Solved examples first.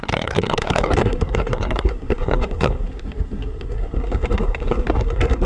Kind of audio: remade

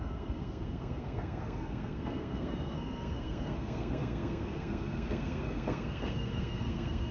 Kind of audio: remade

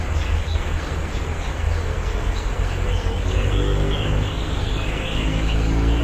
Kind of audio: remade